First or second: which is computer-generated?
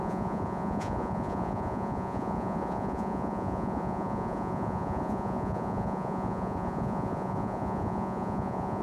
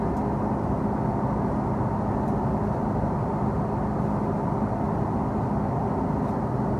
first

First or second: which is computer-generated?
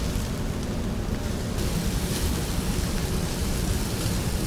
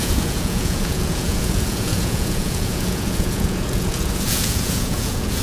second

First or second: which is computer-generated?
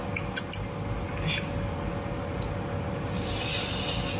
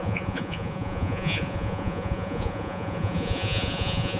second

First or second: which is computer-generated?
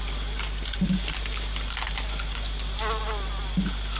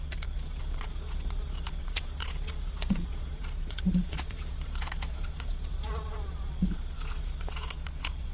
second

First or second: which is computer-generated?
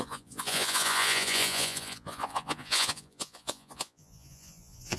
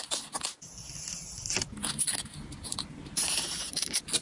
first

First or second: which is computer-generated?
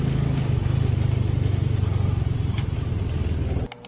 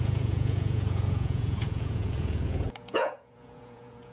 second